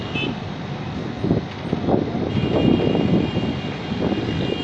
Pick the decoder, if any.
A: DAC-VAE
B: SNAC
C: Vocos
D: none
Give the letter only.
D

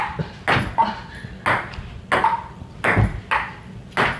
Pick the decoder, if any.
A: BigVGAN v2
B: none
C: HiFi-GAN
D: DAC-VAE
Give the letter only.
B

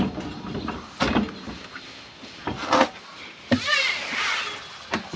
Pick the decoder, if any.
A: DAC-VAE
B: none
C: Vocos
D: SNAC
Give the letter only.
B